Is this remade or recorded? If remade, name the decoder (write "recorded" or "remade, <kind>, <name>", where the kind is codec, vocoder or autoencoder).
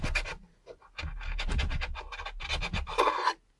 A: recorded